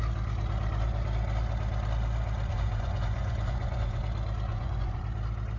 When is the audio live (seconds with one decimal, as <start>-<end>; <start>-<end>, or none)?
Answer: 0.0-2.5; 4.0-4.5; 5.0-5.6